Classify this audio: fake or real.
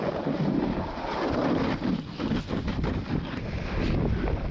real